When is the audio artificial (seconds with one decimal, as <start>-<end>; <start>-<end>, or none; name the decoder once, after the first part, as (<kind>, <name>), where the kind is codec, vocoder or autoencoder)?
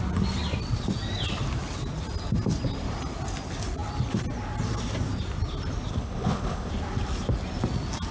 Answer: 5.9-6.7 (codec, HILCodec)